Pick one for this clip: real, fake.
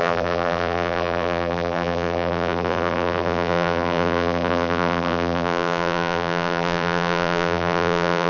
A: fake